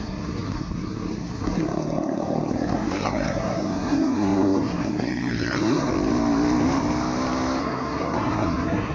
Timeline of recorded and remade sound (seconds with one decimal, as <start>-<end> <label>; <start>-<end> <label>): 0.0-5.9 remade; 5.9-7.6 recorded; 7.6-8.9 remade